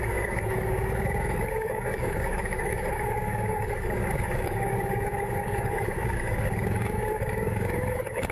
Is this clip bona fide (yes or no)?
no